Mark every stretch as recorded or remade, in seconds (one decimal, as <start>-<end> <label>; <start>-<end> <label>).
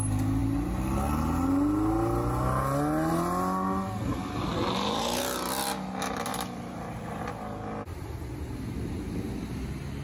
0.0-6.3 recorded; 6.3-7.4 remade; 7.4-10.0 recorded